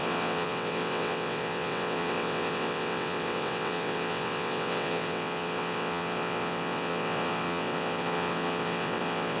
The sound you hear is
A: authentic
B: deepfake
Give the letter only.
B